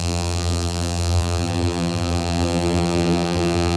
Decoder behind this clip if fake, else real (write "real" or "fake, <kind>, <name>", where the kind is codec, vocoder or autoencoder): fake, vocoder, BigVGAN v2